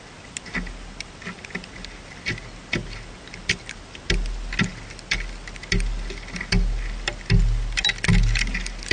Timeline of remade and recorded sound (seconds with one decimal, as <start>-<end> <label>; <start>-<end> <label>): 0.0-8.9 recorded